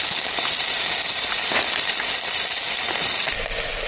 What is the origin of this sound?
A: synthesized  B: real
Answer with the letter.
B